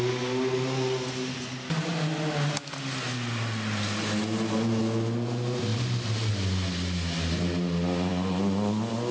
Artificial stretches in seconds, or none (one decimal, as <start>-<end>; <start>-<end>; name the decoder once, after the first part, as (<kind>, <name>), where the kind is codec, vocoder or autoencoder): none